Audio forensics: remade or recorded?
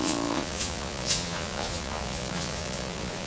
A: remade